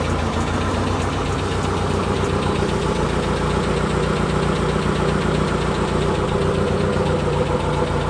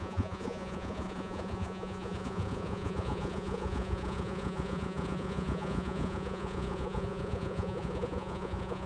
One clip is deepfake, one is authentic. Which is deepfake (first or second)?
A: second